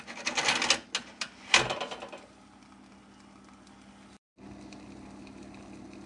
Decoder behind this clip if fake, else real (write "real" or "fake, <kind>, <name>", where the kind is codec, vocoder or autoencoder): real